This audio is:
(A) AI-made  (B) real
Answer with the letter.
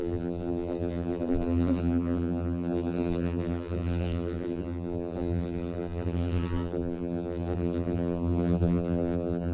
A